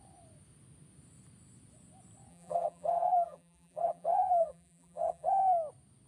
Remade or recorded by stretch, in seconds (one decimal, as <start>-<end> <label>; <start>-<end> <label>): 0.0-2.3 recorded; 2.3-5.3 remade; 5.3-6.1 recorded